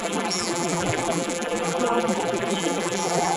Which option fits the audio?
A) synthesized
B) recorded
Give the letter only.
A